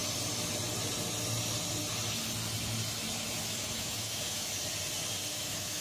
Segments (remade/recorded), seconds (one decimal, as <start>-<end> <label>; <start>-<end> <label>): 0.0-3.5 recorded; 3.5-4.5 remade; 4.5-5.3 recorded; 5.3-5.8 remade